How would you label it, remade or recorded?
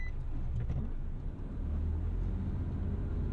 recorded